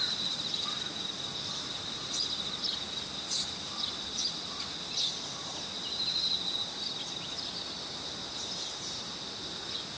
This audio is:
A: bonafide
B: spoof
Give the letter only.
A